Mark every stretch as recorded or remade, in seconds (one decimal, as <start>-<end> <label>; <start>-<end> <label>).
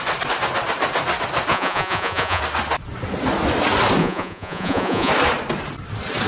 0.0-1.5 recorded; 1.5-2.4 remade; 2.4-4.0 recorded; 4.0-5.1 remade; 5.1-6.3 recorded